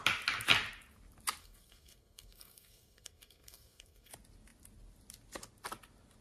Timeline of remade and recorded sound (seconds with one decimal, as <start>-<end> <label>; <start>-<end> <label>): 0.0-1.4 recorded; 1.4-4.1 remade; 4.1-6.2 recorded